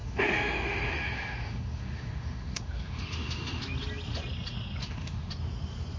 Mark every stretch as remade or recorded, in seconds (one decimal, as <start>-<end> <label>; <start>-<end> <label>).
0.0-3.6 remade; 3.6-4.8 recorded; 4.8-5.3 remade; 5.3-6.0 recorded